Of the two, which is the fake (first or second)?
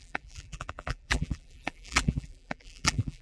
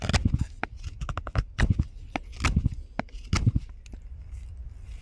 first